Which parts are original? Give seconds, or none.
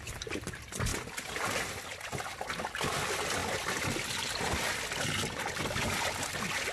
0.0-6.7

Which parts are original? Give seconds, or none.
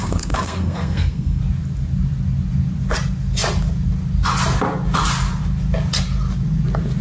1.4-7.0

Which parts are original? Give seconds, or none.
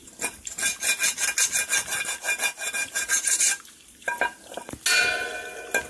0.0-2.8; 4.5-5.9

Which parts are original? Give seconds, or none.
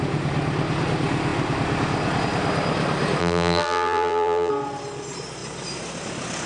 0.0-3.2; 4.5-6.5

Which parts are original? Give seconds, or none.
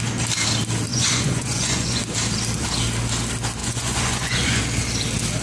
0.0-0.9; 2.0-3.6; 4.6-5.4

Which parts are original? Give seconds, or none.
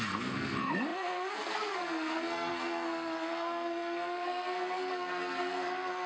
none